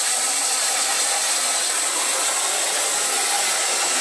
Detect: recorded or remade recorded